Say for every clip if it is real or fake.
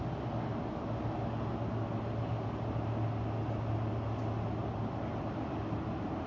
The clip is real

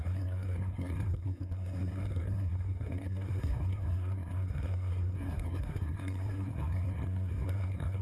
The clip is fake